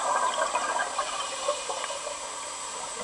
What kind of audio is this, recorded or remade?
recorded